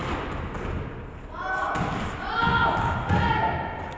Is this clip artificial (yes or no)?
no